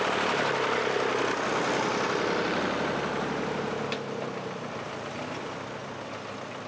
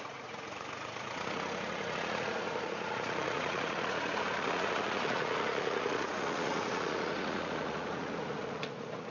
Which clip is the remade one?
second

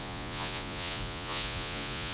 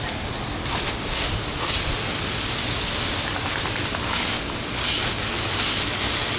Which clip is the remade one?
first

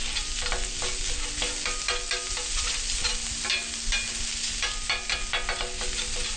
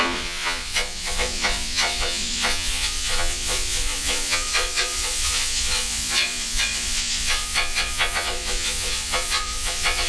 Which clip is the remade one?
second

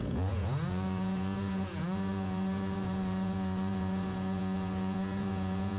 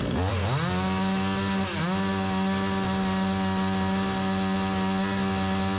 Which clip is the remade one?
first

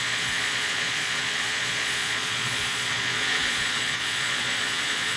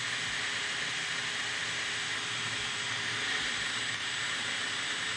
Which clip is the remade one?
first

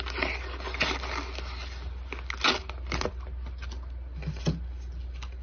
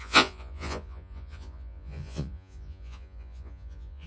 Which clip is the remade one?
second